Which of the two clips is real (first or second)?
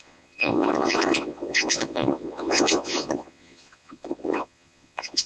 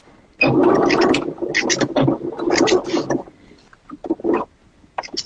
second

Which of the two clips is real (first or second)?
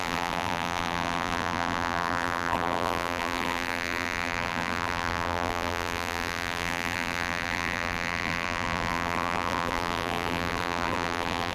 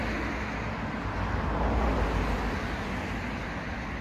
second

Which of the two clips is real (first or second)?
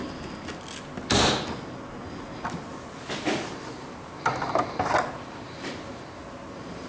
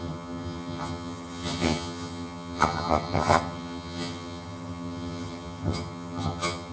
first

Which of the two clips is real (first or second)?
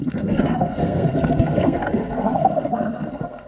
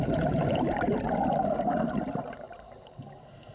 second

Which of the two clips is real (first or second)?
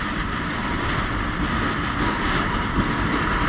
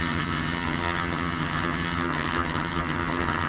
first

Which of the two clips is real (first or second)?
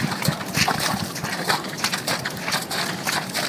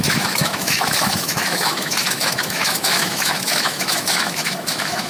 first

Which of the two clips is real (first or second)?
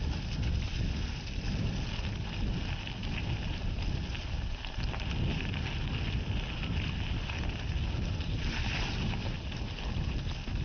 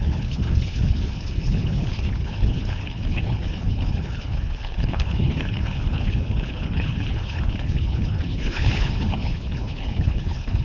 first